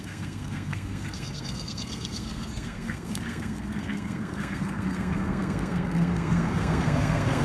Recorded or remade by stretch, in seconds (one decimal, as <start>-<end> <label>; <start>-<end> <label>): 0.0-7.4 remade